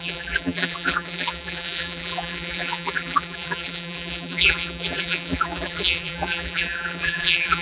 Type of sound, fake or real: fake